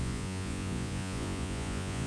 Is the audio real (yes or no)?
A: no